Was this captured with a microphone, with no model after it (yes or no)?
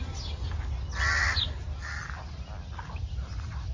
yes